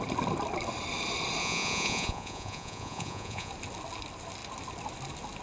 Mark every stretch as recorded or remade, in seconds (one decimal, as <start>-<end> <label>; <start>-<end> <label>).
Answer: 0.0-1.4 recorded; 1.4-3.5 remade; 3.5-5.4 recorded